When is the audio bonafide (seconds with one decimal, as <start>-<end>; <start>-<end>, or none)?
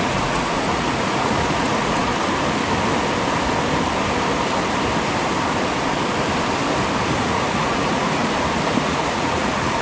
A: 2.1-7.2; 8.2-8.8